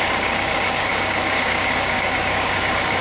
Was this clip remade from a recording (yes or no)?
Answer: yes